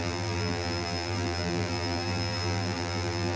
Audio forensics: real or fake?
fake